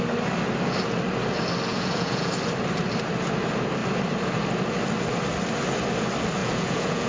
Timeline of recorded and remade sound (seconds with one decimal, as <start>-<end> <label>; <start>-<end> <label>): 0.0-1.7 recorded; 1.7-2.3 remade; 2.3-6.4 recorded; 6.4-7.1 remade